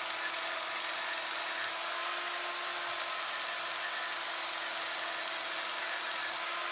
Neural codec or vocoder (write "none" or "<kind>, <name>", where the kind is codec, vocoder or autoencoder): none